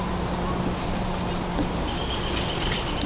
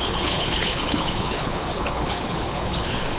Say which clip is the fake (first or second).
second